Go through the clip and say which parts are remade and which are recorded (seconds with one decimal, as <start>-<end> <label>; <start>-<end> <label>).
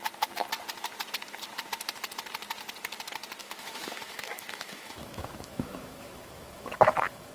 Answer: 0.0-3.4 recorded; 3.4-7.3 remade